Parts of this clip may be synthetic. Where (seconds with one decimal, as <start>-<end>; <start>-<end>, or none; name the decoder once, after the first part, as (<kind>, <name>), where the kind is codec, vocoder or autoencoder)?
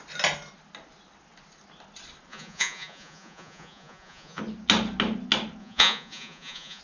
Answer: 2.3-4.4 (vocoder, Vocos); 5.6-6.8